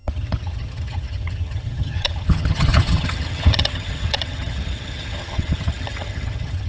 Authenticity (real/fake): fake